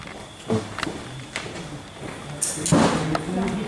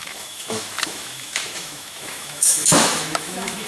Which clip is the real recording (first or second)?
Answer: first